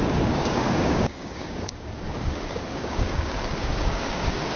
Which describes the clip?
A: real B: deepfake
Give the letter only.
B